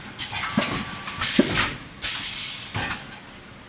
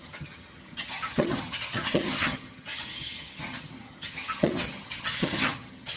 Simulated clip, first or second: second